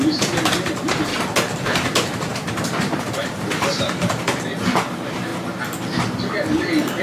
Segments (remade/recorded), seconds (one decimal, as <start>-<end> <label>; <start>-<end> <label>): 0.0-1.1 remade; 1.1-1.7 recorded; 1.7-5.3 remade; 5.3-7.0 recorded